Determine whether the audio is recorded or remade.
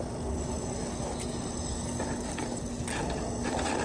recorded